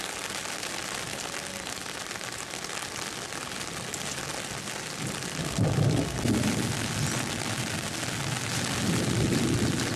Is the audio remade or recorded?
recorded